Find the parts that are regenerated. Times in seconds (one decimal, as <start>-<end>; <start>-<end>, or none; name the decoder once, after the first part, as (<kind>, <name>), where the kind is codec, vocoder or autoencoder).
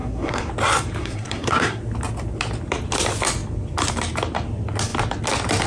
0.0-0.5 (codec, SNAC); 1.0-1.8